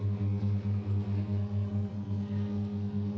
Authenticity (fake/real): fake